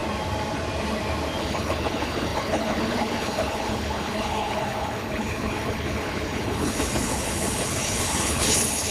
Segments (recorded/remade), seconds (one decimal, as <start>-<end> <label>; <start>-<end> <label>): 0.0-1.4 recorded; 1.4-8.9 remade